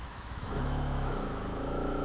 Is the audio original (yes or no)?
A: no